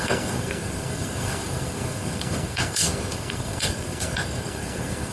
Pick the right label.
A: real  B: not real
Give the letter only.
B